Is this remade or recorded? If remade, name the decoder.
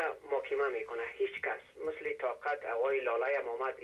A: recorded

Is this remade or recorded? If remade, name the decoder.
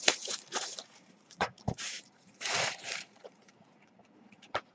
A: remade, vocoder, Vocos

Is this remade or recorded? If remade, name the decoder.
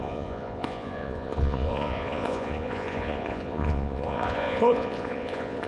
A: remade, vocoder, Vocos